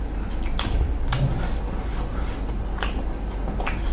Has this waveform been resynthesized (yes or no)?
no